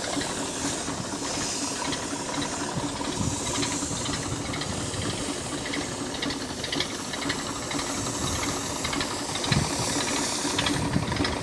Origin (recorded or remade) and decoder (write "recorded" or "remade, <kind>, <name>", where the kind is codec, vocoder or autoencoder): recorded